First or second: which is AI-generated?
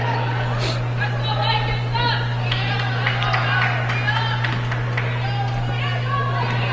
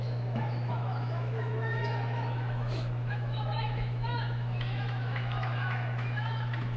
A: second